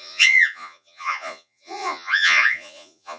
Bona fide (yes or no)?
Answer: no